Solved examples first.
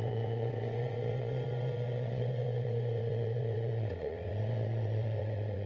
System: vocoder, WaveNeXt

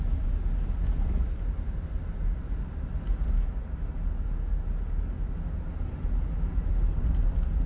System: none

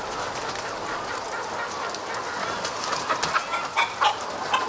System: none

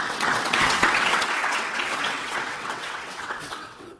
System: vocoder, WaveNeXt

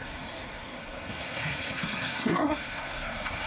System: codec, SNAC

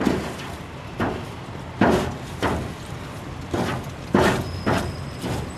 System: none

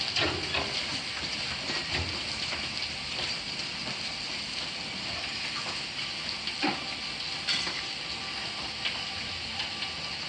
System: none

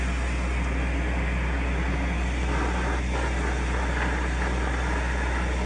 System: none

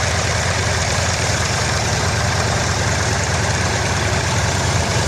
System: vocoder, BigVGAN v2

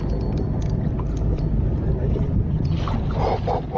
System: none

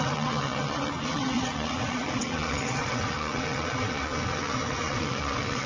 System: vocoder, WaveNeXt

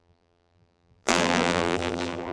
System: vocoder, BigVGAN v2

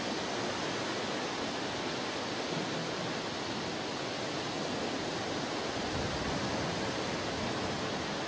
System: none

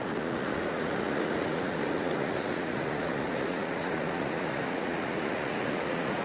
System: vocoder, Vocos